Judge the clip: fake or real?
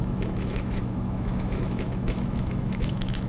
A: fake